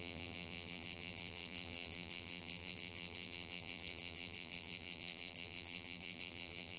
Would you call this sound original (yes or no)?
no